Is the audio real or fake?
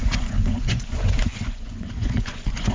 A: fake